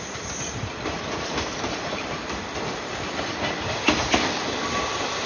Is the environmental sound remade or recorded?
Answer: recorded